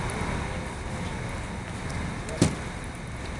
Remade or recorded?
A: recorded